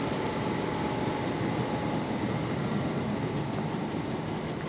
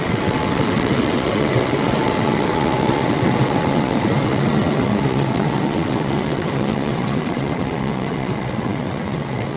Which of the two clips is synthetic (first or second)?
second